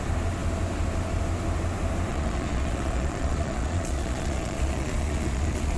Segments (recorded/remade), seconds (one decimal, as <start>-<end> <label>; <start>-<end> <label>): 0.0-2.1 recorded; 2.1-5.8 remade